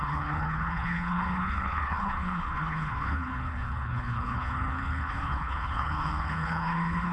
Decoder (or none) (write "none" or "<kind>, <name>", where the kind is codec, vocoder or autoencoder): codec, HILCodec